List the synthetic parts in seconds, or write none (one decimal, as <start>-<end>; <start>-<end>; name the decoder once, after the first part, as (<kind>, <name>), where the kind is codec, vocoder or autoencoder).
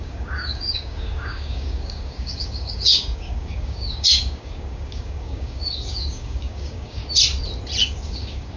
0.0-7.0 (codec, DAC); 7.8-8.6